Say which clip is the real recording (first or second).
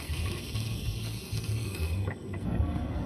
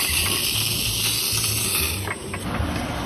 second